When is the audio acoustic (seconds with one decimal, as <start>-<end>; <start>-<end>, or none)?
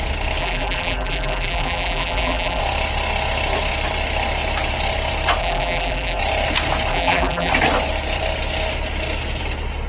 0.0-0.4; 2.6-5.4; 6.2-6.9; 7.5-9.9